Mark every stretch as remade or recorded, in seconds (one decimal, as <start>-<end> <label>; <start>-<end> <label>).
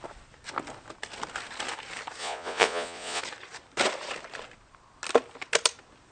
0.0-2.2 recorded; 2.2-3.2 remade; 3.2-6.1 recorded